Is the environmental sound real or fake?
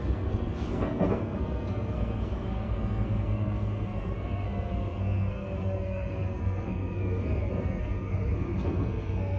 fake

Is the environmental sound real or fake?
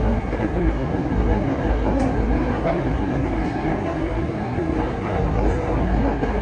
fake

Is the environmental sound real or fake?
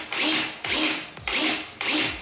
real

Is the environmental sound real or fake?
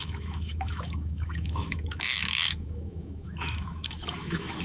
fake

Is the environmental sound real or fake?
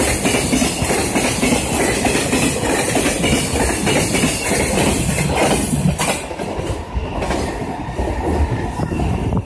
real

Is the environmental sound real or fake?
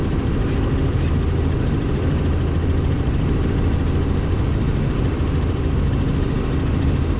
fake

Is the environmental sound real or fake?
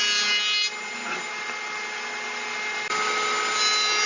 real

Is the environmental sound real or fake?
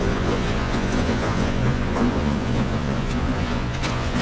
fake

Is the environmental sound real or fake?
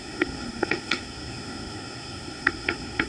fake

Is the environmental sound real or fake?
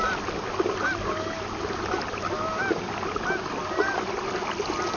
real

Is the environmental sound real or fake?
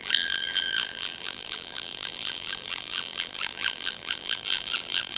fake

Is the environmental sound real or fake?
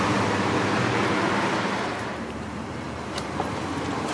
fake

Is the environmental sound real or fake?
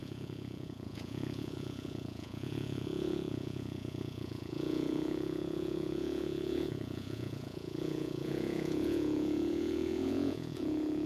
fake